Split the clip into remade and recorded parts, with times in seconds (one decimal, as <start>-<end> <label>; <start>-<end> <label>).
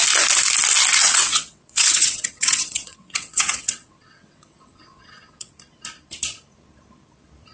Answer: 0.0-1.0 recorded; 1.0-5.5 remade; 5.5-7.5 recorded